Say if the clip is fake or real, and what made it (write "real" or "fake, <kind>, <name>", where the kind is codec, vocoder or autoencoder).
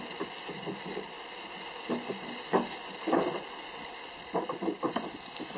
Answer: real